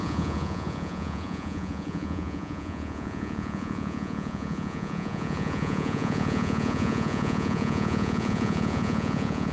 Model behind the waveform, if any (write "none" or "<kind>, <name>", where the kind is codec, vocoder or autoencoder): vocoder, Vocos